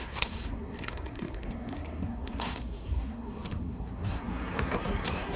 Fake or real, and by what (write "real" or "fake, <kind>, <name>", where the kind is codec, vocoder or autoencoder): fake, codec, SNAC